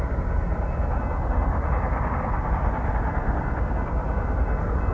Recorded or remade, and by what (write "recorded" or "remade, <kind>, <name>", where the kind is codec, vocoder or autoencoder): recorded